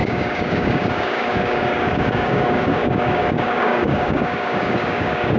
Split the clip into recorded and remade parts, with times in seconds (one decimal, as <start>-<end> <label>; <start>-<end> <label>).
0.0-5.4 remade